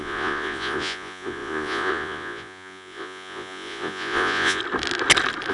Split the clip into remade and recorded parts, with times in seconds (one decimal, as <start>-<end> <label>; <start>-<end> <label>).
0.0-4.6 remade; 4.6-5.5 recorded